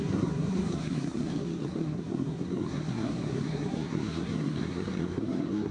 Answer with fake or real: fake